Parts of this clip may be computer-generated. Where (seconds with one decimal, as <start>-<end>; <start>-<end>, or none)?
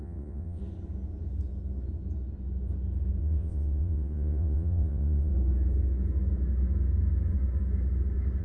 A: 0.0-0.6; 3.2-5.3